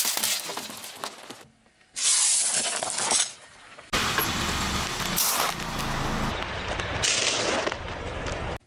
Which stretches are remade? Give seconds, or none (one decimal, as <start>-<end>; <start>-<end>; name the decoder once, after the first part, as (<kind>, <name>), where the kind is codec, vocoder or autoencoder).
none